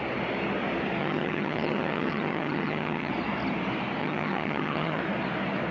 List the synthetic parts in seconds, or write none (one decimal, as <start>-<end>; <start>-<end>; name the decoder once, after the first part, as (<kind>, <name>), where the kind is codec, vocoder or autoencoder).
1.0-3.1 (vocoder, HiFi-GAN); 4.0-5.0